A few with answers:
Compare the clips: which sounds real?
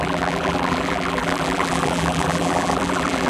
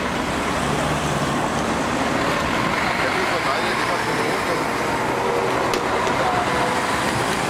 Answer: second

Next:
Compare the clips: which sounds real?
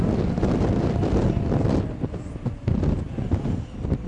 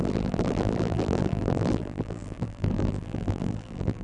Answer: first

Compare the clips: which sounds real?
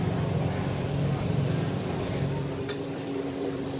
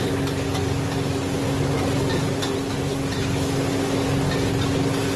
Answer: second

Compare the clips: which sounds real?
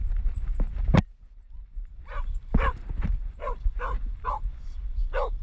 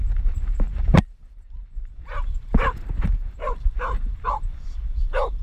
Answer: first